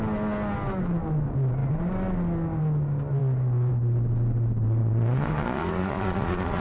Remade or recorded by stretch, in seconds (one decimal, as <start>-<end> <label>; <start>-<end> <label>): 0.0-4.8 recorded; 4.8-6.6 remade